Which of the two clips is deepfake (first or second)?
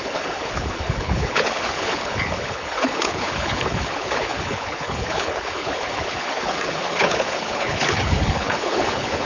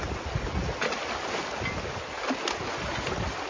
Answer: first